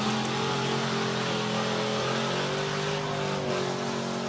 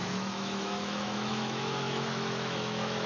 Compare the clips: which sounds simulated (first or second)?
second